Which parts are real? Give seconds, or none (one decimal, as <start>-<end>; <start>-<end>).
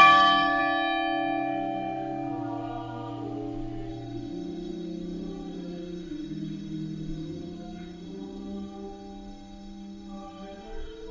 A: 0.6-3.9